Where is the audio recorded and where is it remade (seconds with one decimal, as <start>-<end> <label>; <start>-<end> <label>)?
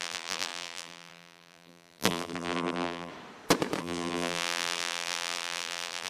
0.0-3.1 remade; 3.1-3.8 recorded; 3.8-6.1 remade